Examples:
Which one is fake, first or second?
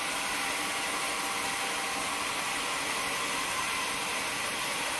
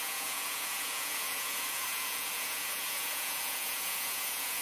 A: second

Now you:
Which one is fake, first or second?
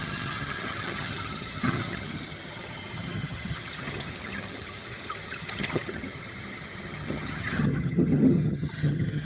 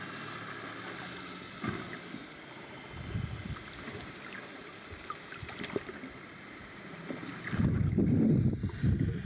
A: first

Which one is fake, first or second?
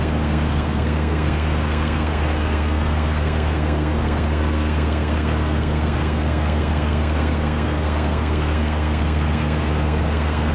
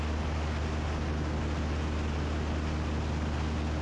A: first